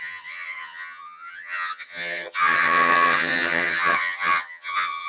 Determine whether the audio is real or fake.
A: fake